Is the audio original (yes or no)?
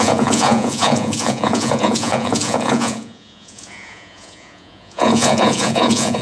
no